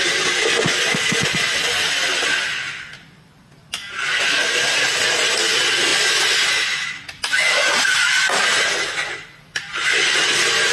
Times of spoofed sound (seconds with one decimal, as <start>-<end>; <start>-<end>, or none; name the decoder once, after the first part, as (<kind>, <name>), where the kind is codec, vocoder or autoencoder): 5.9-6.5 (vocoder, BigVGAN v2)